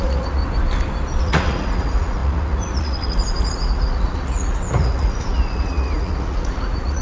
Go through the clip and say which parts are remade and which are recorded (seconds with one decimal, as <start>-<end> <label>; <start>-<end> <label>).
0.0-0.4 remade; 0.4-1.2 recorded; 1.2-7.0 remade